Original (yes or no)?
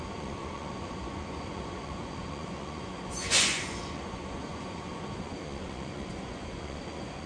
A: no